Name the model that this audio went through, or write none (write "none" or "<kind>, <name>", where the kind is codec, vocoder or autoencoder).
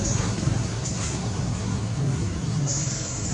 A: codec, SNAC